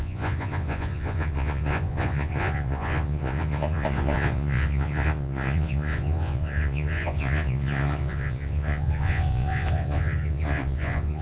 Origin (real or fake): fake